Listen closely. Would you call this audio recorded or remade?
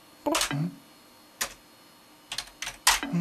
recorded